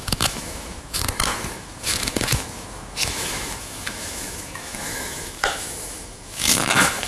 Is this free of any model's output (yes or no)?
no